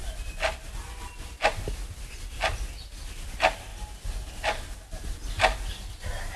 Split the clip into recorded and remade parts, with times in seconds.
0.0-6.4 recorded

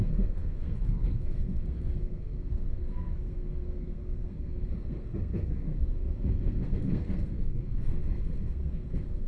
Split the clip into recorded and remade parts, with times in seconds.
0.0-9.3 remade

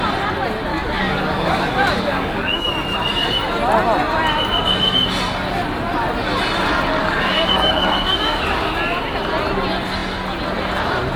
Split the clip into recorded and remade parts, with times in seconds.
0.0-0.7 recorded; 0.7-2.7 remade; 2.7-7.0 recorded; 7.0-8.8 remade; 8.8-11.2 recorded

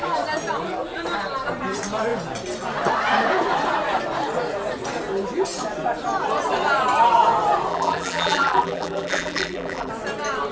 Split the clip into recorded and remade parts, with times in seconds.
0.0-7.7 recorded; 7.7-9.9 remade; 9.9-10.5 recorded